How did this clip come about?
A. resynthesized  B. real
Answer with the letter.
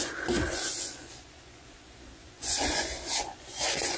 A